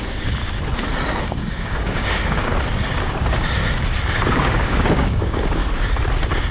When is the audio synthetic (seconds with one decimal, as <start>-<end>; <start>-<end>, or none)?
0.0-0.4; 1.2-2.5; 4.3-5.6

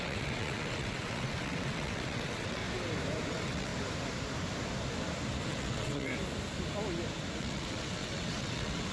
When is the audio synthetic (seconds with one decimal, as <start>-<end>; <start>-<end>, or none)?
0.0-2.6; 3.3-3.7; 5.5-6.1; 7.4-8.9

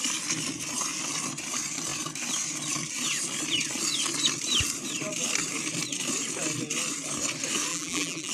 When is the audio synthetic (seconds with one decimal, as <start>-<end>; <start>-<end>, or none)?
7.7-8.3

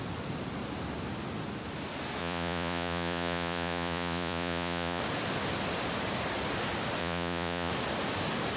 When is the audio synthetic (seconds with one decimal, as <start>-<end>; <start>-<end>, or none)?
2.2-5.0; 7.0-7.7

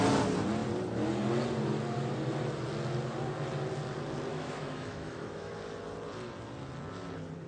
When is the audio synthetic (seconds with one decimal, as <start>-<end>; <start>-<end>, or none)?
4.3-5.5

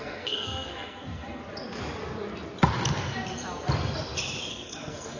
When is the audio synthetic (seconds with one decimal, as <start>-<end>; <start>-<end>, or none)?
0.0-1.4; 4.5-5.2